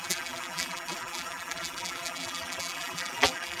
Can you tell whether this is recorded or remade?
remade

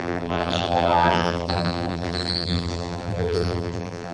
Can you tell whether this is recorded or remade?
remade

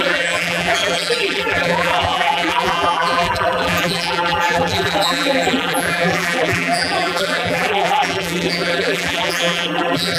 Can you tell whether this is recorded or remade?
remade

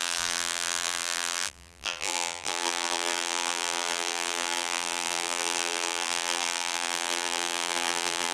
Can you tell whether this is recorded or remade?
remade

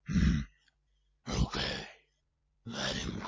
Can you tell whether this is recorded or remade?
recorded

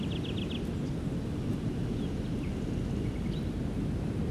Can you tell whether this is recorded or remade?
recorded